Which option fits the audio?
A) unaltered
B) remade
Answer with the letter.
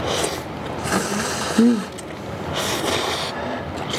A